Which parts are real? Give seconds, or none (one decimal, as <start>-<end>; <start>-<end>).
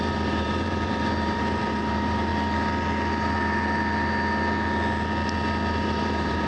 2.3-5.7